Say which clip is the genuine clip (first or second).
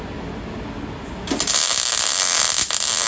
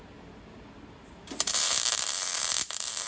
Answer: first